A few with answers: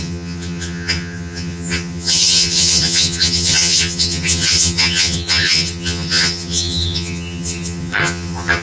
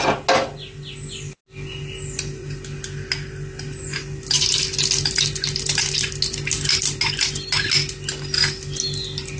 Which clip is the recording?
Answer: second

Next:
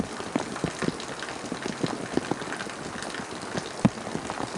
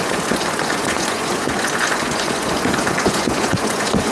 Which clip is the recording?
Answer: first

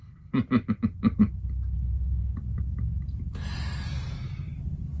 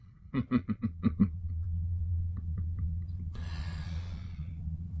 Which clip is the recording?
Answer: first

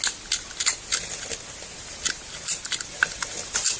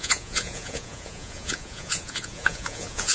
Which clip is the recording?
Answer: first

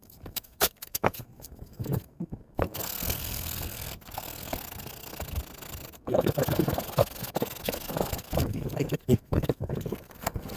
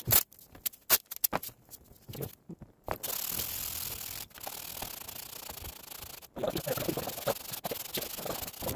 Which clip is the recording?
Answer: second